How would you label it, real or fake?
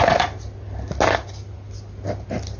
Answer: real